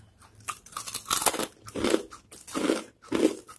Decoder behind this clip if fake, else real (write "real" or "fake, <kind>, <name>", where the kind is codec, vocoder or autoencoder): real